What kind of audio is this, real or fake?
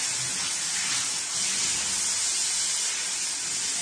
real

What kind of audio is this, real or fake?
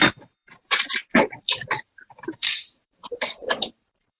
fake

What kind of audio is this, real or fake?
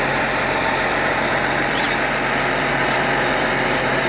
fake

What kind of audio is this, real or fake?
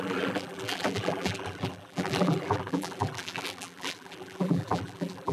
fake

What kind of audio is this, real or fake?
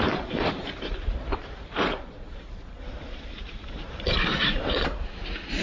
fake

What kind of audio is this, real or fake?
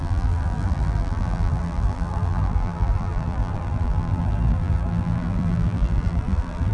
fake